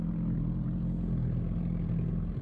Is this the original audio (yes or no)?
yes